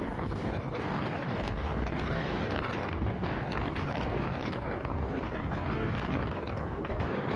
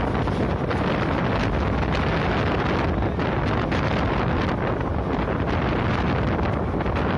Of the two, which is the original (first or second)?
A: second